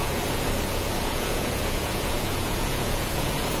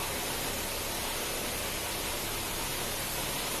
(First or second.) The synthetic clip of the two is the first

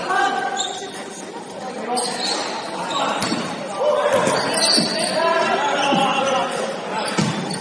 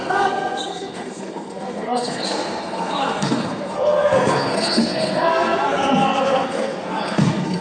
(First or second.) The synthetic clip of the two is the second